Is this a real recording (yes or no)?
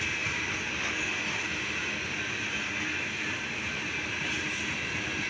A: yes